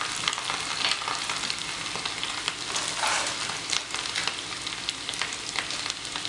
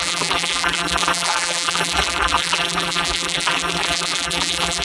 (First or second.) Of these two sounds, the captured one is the first